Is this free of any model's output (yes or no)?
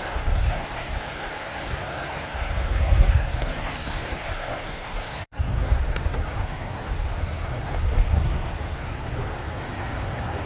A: no